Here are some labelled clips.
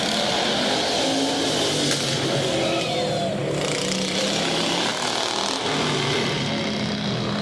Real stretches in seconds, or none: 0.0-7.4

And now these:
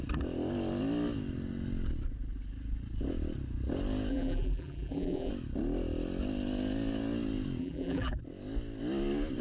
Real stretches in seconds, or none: 0.0-4.1; 5.3-7.6; 8.2-9.4

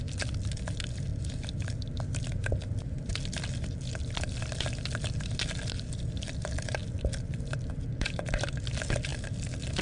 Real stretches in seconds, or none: 0.0-9.8